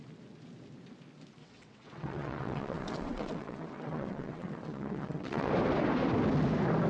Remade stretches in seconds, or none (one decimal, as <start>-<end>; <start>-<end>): 1.4-5.5